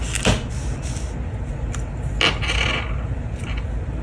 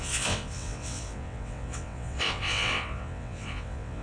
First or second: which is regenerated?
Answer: second